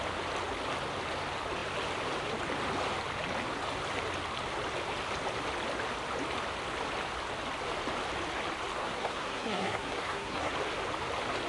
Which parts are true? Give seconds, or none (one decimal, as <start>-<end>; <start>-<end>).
0.0-8.8; 10.5-11.5

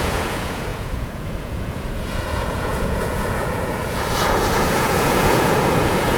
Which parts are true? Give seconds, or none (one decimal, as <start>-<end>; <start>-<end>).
none

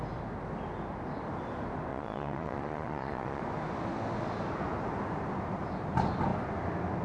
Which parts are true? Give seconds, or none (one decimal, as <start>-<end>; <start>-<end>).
0.0-1.9; 3.4-7.0